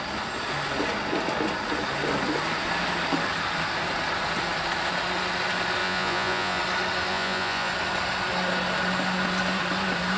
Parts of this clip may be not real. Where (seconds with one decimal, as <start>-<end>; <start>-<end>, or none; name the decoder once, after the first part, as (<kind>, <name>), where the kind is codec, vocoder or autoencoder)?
5.8-6.6 (vocoder, Vocos); 7.1-7.7